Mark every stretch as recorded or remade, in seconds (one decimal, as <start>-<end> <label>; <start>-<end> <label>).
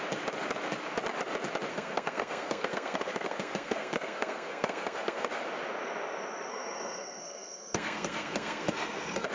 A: 0.0-1.7 recorded; 1.7-5.3 remade; 5.3-6.5 recorded; 6.5-9.3 remade